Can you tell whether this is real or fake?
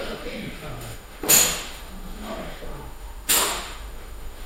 fake